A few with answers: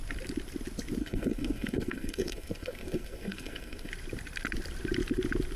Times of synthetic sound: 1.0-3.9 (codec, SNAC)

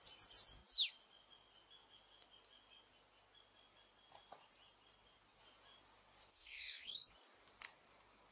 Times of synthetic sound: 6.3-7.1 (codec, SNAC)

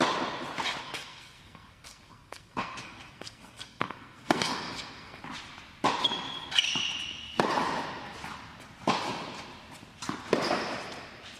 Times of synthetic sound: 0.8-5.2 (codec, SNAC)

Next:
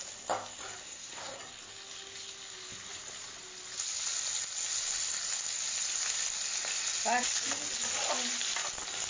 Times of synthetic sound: 0.8-1.4 (codec, SNAC)